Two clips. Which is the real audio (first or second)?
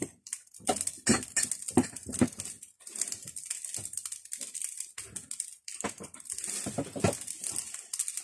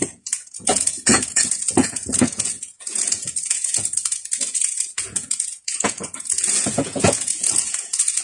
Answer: first